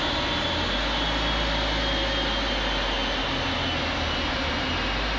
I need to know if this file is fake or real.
real